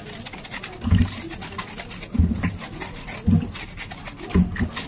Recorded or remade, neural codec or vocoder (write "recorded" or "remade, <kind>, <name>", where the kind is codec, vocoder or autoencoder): recorded